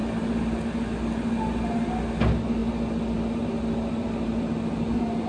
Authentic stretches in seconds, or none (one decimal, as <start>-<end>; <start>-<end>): 0.0-5.3